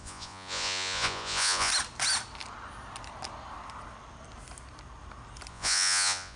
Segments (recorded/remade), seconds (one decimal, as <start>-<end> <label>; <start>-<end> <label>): 0.0-1.7 remade; 1.7-5.5 recorded; 5.5-6.4 remade